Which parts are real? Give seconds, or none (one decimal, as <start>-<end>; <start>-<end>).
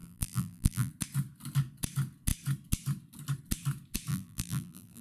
0.9-4.1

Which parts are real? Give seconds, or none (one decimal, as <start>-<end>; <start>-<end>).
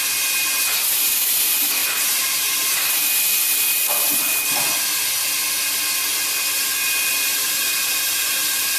0.0-1.8; 2.9-7.1